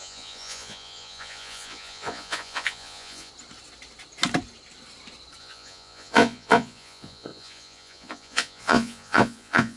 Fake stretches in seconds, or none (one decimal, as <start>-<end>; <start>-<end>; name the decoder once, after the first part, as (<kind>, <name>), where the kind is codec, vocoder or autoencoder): 0.0-3.3 (vocoder, Vocos); 5.4-9.8